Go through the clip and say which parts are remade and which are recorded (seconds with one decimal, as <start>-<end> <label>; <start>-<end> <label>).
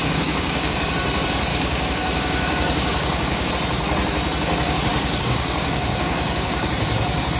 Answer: 0.0-0.9 remade; 0.9-1.5 recorded; 1.5-3.5 remade; 3.5-4.9 recorded; 4.9-6.7 remade; 6.7-7.4 recorded